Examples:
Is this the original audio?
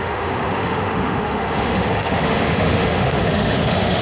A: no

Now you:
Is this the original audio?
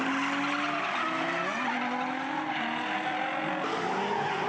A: yes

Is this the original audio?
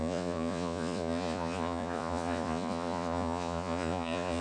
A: no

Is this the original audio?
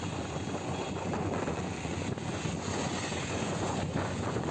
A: no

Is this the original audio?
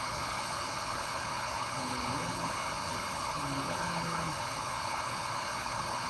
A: no